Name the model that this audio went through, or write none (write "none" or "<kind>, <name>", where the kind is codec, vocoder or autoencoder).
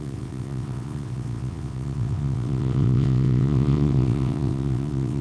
vocoder, WaveNeXt